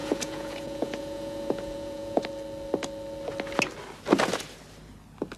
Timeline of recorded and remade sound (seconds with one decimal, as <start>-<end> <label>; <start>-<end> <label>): 0.0-2.2 remade; 2.2-5.4 recorded